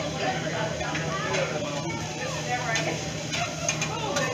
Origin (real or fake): real